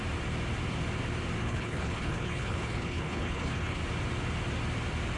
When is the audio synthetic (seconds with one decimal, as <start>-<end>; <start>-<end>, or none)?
1.4-3.8